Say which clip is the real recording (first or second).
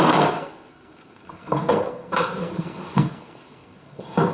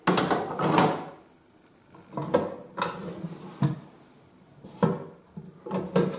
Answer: second